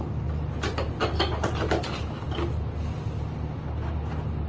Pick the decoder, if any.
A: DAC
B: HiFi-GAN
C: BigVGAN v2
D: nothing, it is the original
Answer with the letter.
D